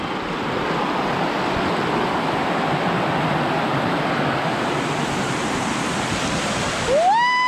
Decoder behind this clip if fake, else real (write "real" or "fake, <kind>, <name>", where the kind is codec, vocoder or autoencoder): real